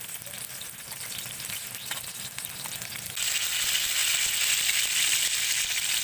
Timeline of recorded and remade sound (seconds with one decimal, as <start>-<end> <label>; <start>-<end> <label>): 0.0-6.0 recorded